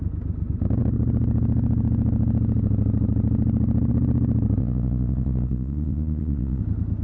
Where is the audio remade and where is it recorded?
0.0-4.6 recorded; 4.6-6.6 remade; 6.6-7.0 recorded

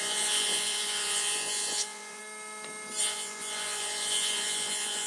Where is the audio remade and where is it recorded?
0.0-2.2 remade; 2.2-3.0 recorded; 3.0-5.1 remade

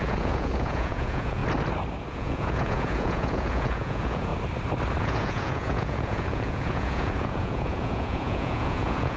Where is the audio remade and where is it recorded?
0.0-1.4 remade; 1.4-2.1 recorded; 2.1-4.3 remade; 4.3-5.0 recorded; 5.0-9.2 remade

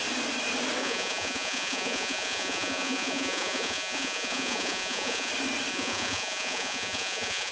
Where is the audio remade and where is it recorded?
0.0-0.8 recorded; 0.8-5.3 remade; 5.3-5.7 recorded; 5.7-7.5 remade

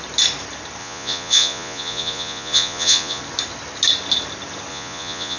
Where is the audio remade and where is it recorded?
0.0-0.8 recorded; 0.8-3.2 remade; 3.2-4.7 recorded; 4.7-5.4 remade

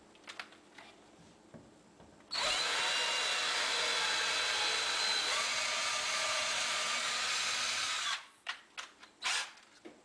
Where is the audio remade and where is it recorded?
0.0-5.1 recorded; 5.1-8.6 remade; 8.6-10.0 recorded

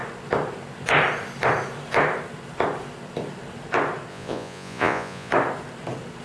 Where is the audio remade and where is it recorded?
0.0-4.1 recorded; 4.1-5.3 remade; 5.3-6.2 recorded